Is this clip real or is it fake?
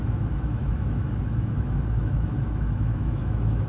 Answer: fake